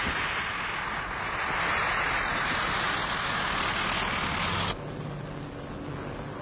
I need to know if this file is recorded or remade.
recorded